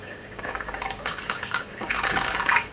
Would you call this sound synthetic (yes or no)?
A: yes